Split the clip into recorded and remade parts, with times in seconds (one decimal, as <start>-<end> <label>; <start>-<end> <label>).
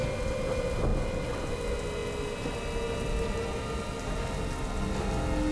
0.0-5.5 recorded